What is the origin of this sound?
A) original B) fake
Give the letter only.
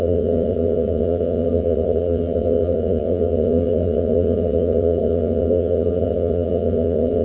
B